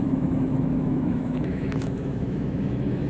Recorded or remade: remade